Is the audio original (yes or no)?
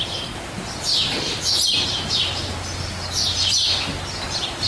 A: yes